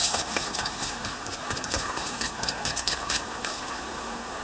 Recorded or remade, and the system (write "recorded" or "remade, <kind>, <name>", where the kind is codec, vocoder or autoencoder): remade, codec, SNAC